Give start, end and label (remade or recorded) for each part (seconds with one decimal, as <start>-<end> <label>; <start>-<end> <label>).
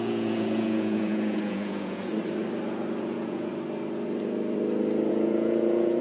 0.0-2.1 remade; 2.1-3.0 recorded; 3.0-3.5 remade; 3.5-5.1 recorded; 5.1-6.0 remade